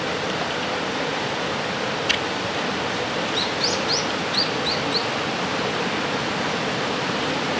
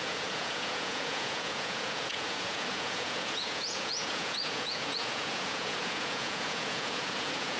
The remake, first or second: second